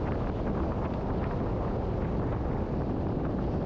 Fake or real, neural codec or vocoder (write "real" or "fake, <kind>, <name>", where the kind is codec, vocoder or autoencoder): real